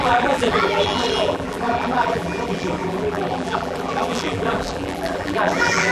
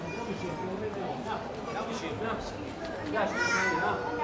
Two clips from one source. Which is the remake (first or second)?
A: first